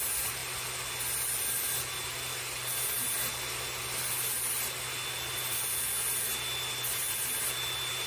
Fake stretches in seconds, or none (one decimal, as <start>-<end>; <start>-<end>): none